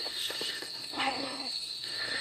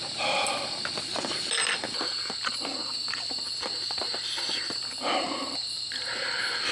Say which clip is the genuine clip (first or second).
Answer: second